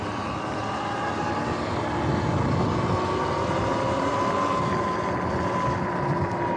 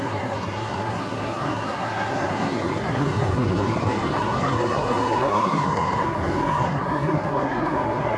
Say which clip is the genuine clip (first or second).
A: first